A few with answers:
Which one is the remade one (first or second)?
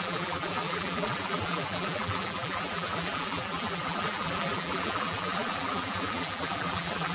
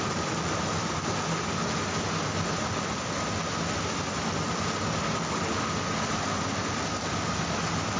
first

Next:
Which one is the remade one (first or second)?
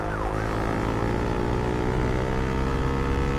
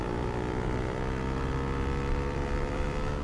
second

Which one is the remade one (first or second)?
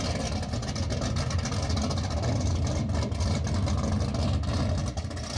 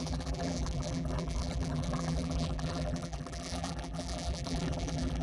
second